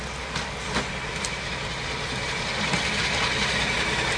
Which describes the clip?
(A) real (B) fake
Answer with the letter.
A